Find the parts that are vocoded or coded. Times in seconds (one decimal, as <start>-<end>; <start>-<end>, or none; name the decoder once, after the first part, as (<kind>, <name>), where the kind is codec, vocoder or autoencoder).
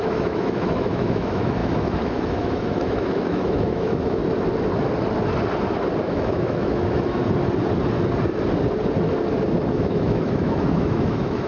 0.0-4.2 (autoencoder, DAC-VAE); 6.0-7.2; 9.7-11.5